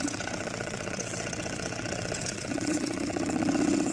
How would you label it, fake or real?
fake